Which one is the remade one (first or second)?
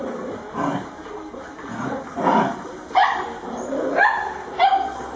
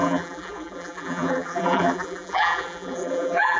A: second